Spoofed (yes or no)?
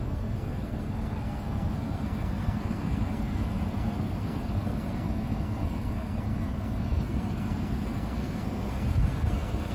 yes